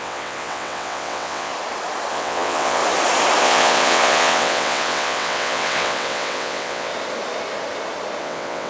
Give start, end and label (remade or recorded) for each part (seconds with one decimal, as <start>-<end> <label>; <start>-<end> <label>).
0.0-1.5 remade; 1.5-2.1 recorded; 2.1-2.8 remade; 2.8-3.4 recorded; 3.4-6.9 remade; 6.9-8.2 recorded; 8.2-8.7 remade